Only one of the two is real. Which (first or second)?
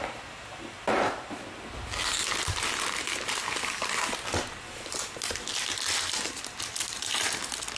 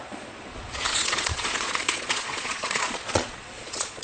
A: first